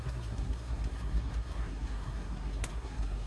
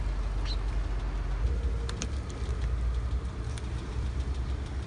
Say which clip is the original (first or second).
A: second